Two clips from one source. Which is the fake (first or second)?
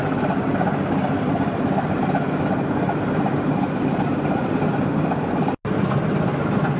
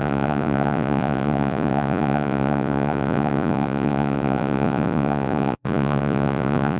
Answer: second